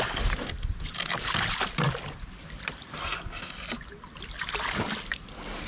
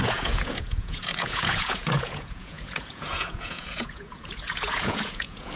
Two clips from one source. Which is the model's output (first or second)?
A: second